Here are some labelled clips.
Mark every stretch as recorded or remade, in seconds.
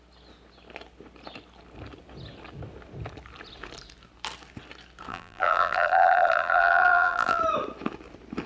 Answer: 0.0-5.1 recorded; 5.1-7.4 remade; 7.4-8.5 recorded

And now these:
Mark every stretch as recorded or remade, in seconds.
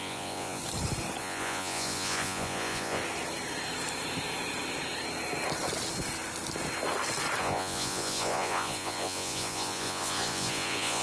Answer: 0.0-0.6 remade; 0.6-1.2 recorded; 1.2-3.0 remade; 3.0-7.4 recorded; 7.4-11.0 remade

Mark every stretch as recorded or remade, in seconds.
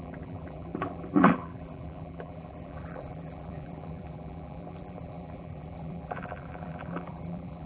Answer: 0.0-7.7 remade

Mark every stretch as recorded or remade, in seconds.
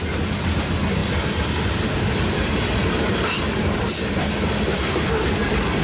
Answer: 0.0-5.8 recorded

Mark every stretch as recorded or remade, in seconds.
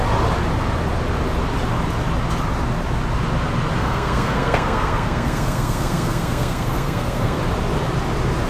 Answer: 0.0-3.8 recorded; 3.8-7.4 remade; 7.4-8.5 recorded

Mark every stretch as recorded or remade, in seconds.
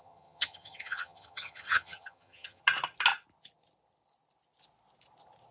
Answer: 0.0-2.6 remade; 2.6-5.5 recorded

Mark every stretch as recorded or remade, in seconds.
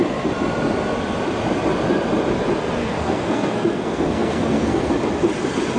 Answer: 0.0-2.8 recorded; 2.8-4.9 remade; 4.9-5.8 recorded